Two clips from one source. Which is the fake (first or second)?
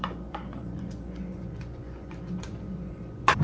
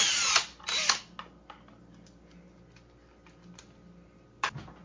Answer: first